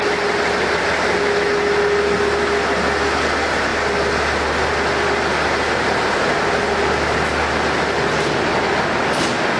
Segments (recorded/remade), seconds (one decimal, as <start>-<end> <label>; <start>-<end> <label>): 0.0-9.6 recorded